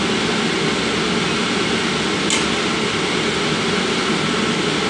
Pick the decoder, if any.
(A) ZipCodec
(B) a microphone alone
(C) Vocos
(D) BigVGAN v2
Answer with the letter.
B